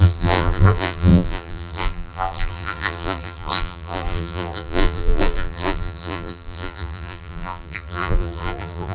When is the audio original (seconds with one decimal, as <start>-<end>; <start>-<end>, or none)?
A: none